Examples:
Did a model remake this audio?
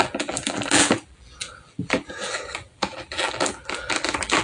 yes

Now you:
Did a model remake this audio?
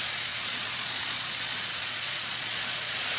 yes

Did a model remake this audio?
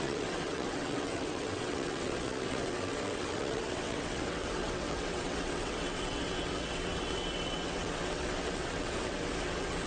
yes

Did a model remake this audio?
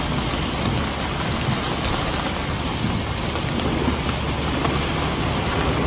no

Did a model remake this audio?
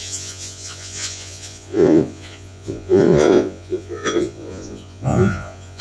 yes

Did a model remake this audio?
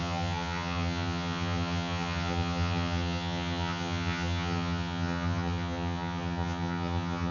yes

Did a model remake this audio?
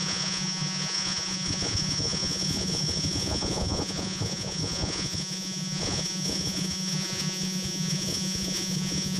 yes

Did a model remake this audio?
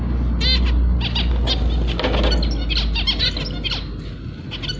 no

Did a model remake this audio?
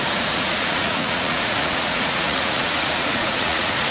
yes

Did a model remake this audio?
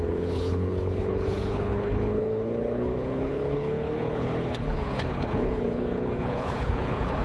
yes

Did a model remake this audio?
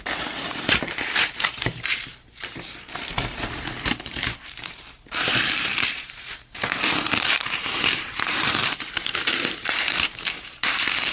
yes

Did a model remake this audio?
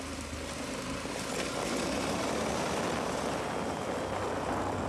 no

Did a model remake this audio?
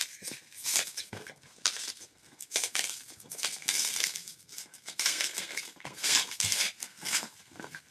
yes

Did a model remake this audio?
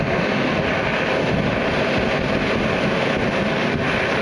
no